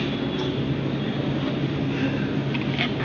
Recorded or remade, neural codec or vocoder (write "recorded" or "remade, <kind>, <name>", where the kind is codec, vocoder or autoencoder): recorded